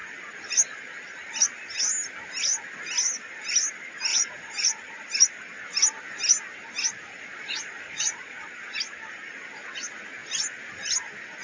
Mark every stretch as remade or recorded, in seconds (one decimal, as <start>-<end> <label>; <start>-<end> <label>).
0.0-4.1 recorded; 4.1-4.7 remade; 4.7-7.1 recorded; 7.1-8.5 remade; 8.5-11.4 recorded

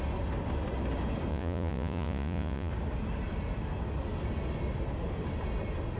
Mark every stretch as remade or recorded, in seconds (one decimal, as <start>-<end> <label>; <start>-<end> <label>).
0.0-1.3 recorded; 1.3-2.7 remade; 2.7-6.0 recorded

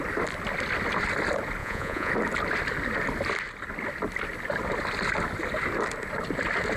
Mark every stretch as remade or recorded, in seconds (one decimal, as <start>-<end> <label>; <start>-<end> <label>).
0.0-1.6 recorded; 1.6-2.1 remade; 2.1-6.8 recorded

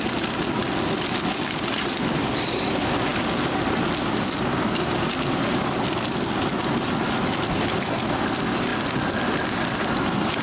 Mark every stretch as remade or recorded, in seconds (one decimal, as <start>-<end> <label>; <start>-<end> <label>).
0.0-10.4 recorded

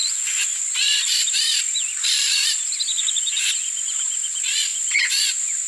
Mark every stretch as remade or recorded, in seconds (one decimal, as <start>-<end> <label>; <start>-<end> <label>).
0.0-1.2 remade; 1.2-2.9 recorded; 2.9-3.5 remade; 3.5-4.7 recorded; 4.7-5.7 remade